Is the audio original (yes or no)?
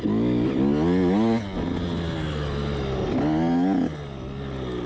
yes